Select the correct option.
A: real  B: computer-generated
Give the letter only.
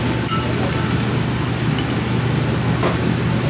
A